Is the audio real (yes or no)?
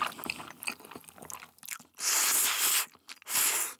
yes